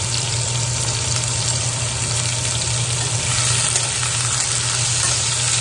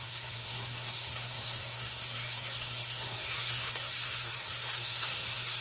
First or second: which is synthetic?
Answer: second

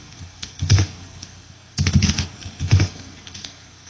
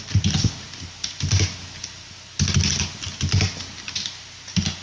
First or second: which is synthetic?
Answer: first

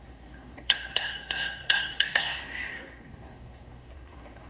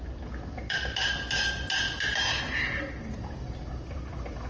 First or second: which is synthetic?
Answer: first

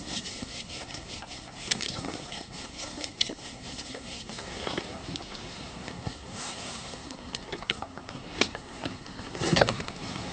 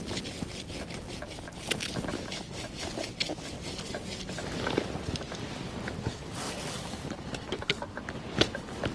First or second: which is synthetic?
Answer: first